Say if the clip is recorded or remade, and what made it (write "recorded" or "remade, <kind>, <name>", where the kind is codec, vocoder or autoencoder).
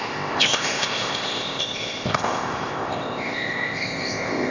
remade, codec, ZipCodec